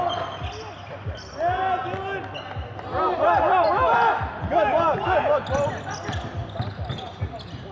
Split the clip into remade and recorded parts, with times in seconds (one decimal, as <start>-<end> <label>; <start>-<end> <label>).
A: 0.0-7.7 recorded